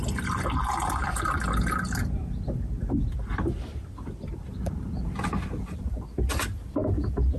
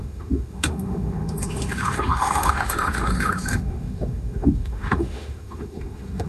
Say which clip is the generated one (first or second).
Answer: second